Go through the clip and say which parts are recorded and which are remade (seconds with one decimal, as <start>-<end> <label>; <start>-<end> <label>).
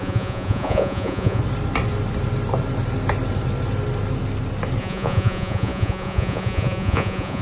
0.0-1.4 remade; 1.4-4.8 recorded; 4.8-7.4 remade